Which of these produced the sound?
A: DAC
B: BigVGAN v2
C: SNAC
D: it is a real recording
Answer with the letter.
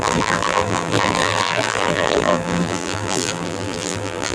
B